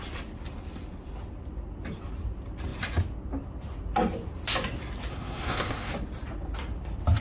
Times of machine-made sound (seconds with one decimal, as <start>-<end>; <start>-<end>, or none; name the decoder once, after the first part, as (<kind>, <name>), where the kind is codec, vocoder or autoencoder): 5.1-5.9 (codec, SNAC)